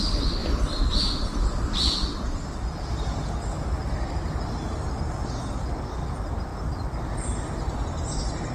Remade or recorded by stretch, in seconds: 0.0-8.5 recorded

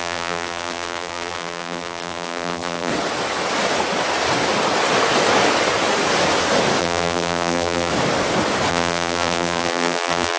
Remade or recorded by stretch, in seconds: 0.0-2.9 remade; 2.9-6.8 recorded; 6.8-7.9 remade; 7.9-8.7 recorded; 8.7-10.4 remade

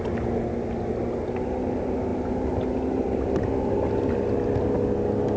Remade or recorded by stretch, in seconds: 0.0-5.4 recorded

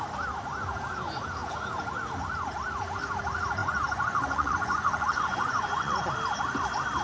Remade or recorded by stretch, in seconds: 0.0-3.6 recorded; 3.6-6.1 remade; 6.1-7.0 recorded

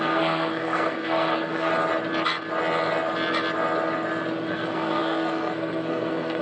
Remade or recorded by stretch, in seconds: 0.0-1.7 remade; 1.7-4.5 recorded; 4.5-6.4 remade

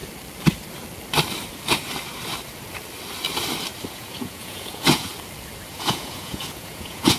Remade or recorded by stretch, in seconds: 0.0-3.9 recorded; 3.9-5.1 remade; 5.1-5.7 recorded; 5.7-7.2 remade

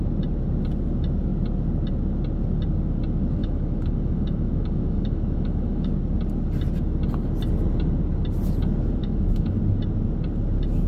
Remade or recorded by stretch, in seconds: 0.0-3.4 recorded; 3.4-5.9 remade; 5.9-9.0 recorded; 9.0-9.6 remade; 9.6-10.9 recorded

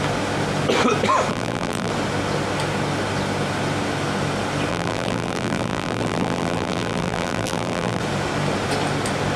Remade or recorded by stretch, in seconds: 0.0-1.3 recorded; 1.3-1.9 remade; 1.9-4.7 recorded; 4.7-8.0 remade; 8.0-9.4 recorded